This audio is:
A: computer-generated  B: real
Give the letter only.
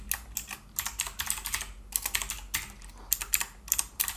B